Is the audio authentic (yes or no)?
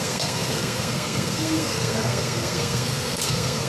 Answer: no